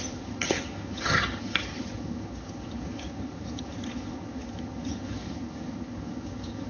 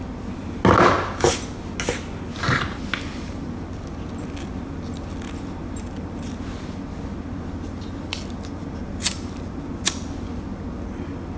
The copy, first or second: first